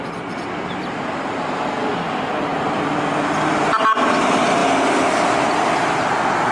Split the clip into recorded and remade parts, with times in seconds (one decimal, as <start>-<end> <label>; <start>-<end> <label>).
0.0-6.5 recorded